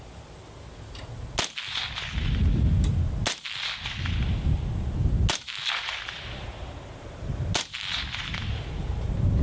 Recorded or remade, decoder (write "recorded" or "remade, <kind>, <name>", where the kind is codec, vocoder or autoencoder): recorded